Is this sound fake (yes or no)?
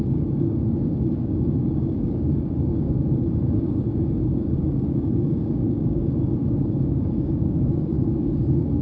yes